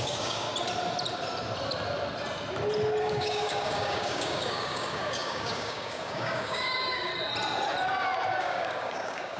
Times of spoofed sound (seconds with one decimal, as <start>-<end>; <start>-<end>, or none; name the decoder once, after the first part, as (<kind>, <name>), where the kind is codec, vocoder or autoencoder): 0.0-0.5 (codec, DAC); 3.0-7.1; 8.4-9.4